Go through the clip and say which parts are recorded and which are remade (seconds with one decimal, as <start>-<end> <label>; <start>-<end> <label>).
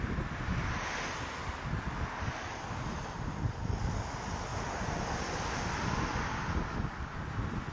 0.0-7.7 recorded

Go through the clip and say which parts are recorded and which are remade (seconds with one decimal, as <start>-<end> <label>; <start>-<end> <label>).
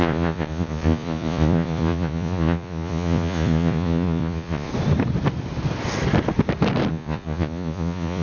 0.0-4.7 remade; 4.7-6.9 recorded; 6.9-8.2 remade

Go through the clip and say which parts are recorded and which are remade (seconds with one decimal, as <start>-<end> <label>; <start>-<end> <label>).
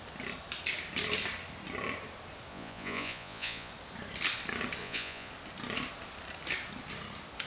0.0-2.5 recorded; 2.5-3.7 remade; 3.7-4.8 recorded; 4.8-5.3 remade; 5.3-7.5 recorded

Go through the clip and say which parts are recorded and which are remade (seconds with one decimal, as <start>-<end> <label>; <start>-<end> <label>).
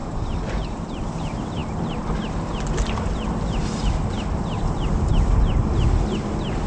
0.0-6.7 recorded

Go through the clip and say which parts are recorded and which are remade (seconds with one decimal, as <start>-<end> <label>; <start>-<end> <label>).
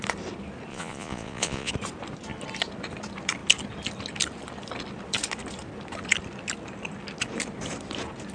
0.0-0.7 recorded; 0.7-1.7 remade; 1.7-8.3 recorded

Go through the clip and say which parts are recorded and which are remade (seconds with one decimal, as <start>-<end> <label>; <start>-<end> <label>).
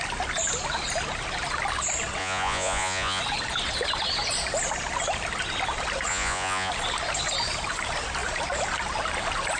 0.0-2.2 recorded; 2.2-3.2 remade; 3.2-6.1 recorded; 6.1-6.7 remade; 6.7-9.6 recorded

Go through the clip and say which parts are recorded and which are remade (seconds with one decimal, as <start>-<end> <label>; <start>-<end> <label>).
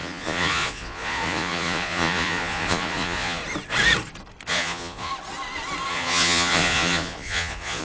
0.0-3.4 remade; 3.4-4.5 recorded; 4.5-5.1 remade; 5.1-5.9 recorded; 5.9-7.8 remade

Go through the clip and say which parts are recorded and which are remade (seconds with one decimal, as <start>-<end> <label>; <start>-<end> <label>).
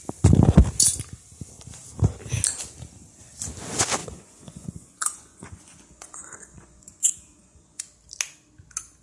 0.0-4.0 recorded; 4.0-7.8 remade; 7.8-9.0 recorded